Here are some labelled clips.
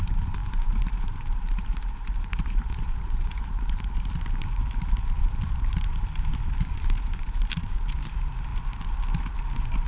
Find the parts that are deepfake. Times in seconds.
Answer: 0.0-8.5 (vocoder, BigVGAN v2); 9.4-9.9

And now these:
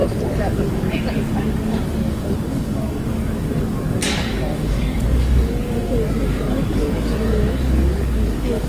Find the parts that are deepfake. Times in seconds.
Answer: 0.0-8.7 (codec, DAC)

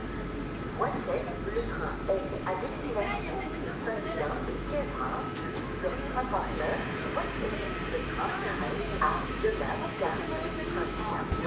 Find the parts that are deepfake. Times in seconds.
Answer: 2.7-6.7 (autoencoder, DAC-VAE); 8.2-11.5